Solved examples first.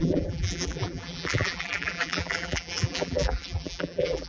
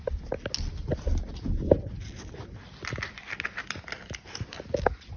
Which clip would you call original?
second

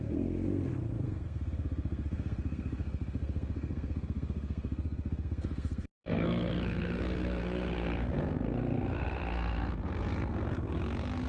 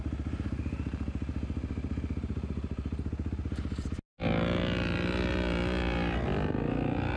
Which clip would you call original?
second